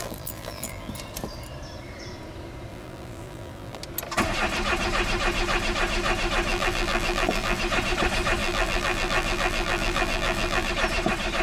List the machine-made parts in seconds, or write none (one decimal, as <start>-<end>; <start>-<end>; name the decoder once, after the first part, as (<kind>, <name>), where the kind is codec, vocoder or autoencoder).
0.0-0.9 (vocoder, BigVGAN v2); 2.7-3.8; 6.5-7.6; 8.4-10.7